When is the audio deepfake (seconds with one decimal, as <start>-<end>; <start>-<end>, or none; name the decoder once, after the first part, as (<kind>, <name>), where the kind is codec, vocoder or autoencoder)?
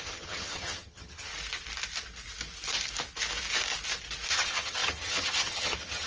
0.0-1.3 (vocoder, HiFi-GAN); 4.3-6.1